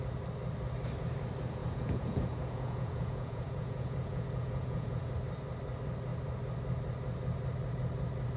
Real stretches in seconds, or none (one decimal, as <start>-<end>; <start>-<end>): 0.0-1.6; 5.1-8.4